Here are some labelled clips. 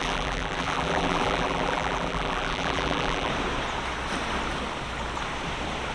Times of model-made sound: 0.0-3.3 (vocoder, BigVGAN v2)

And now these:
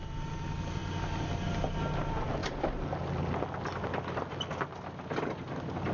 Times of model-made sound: none

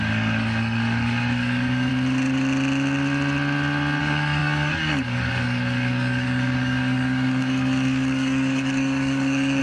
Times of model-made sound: 0.0-1.9 (codec, DAC); 4.0-9.6

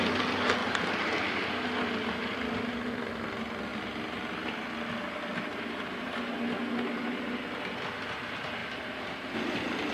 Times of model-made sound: 0.6-1.5 (vocoder, BigVGAN v2)

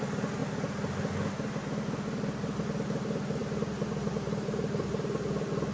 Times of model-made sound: none

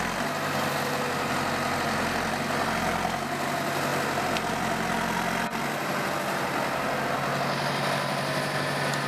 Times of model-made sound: none

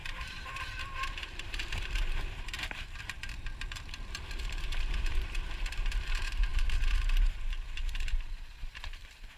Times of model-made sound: 0.0-9.4 (vocoder, BigVGAN v2)

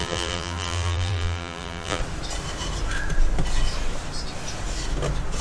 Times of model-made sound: 0.0-2.0 (vocoder, BigVGAN v2)